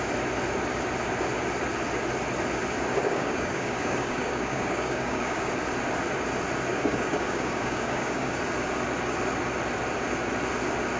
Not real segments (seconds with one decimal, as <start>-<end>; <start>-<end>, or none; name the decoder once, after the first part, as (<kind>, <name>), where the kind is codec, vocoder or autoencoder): 3.0-5.5 (codec, DAC); 6.7-8.4